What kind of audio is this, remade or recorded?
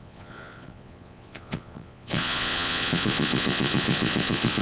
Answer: remade